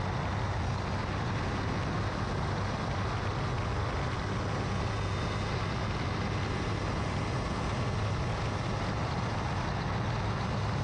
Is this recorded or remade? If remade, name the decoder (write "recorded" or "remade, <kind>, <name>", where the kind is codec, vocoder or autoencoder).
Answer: recorded